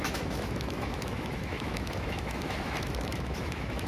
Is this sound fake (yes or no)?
yes